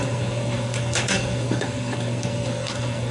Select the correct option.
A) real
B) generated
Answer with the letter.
B